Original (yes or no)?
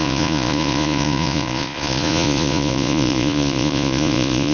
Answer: no